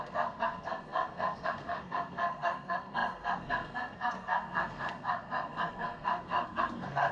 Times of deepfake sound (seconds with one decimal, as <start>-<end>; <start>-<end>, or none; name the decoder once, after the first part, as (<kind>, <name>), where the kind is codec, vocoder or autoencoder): 0.0-7.1 (codec, SNAC)